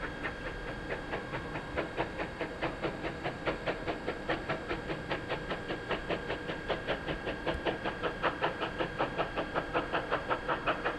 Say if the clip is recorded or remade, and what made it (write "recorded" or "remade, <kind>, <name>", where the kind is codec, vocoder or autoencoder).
recorded